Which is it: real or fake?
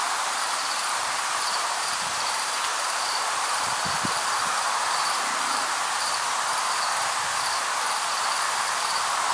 fake